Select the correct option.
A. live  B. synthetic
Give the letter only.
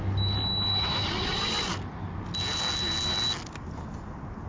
A